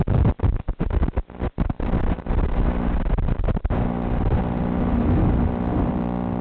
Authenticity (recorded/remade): recorded